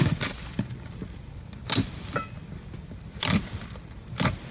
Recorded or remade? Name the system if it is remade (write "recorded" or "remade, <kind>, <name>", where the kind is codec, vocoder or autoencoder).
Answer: remade, vocoder, BigVGAN v2